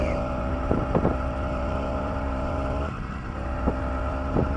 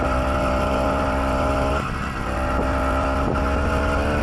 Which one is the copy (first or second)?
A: first